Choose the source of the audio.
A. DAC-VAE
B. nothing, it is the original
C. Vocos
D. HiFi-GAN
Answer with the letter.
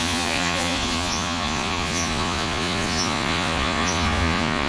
C